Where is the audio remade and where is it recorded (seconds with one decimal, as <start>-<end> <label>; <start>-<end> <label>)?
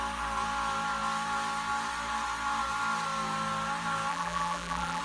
0.0-4.1 recorded; 4.1-5.0 remade